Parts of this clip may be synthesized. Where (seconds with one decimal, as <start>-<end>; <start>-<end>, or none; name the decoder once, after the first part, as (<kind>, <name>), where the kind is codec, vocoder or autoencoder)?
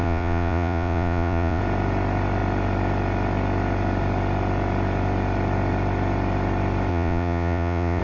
0.0-1.6 (vocoder, Vocos); 6.9-8.0